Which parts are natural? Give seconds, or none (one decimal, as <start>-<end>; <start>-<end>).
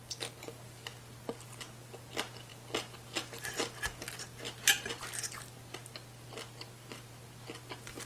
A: 0.0-8.1